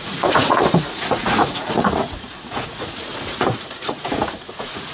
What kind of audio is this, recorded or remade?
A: remade